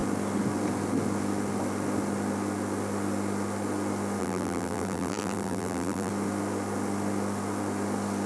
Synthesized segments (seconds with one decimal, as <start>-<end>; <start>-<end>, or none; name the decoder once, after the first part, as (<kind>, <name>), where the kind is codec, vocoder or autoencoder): 4.2-6.1 (vocoder, BigVGAN v2)